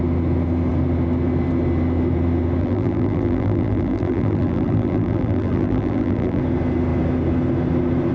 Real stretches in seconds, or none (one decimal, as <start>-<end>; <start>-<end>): 0.0-2.6; 6.4-8.1